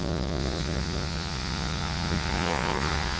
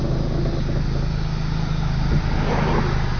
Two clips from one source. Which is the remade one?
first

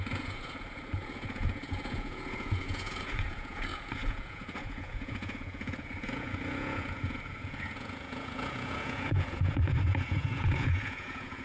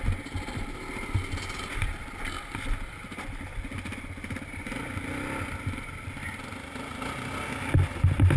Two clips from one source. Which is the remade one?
first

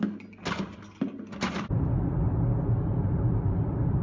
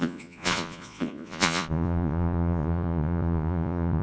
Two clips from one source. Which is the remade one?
second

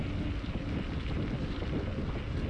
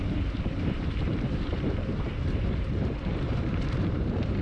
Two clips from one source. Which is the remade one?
second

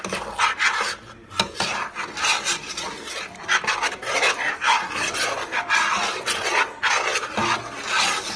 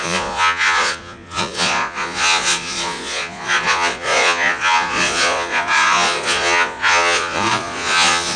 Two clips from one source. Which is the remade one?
second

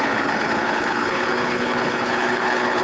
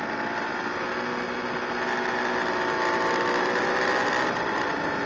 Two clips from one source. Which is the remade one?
first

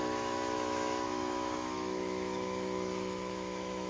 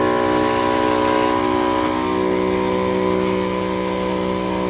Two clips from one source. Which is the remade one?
first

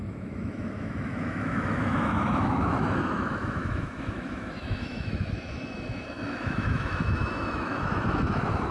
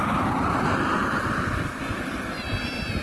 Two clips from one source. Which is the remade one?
first